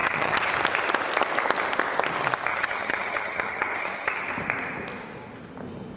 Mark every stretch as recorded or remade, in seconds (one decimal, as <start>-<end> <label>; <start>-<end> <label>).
0.0-0.5 remade; 0.5-2.5 recorded; 2.5-4.3 remade; 4.3-6.0 recorded